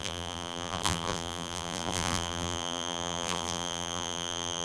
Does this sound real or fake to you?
fake